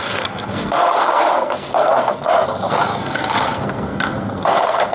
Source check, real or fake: fake